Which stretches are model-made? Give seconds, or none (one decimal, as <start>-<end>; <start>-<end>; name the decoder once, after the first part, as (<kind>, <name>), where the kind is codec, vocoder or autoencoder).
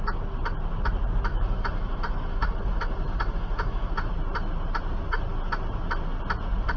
1.3-4.1 (autoencoder, DAC-VAE)